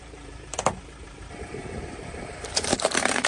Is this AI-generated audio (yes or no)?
yes